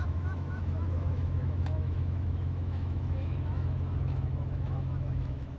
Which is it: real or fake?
fake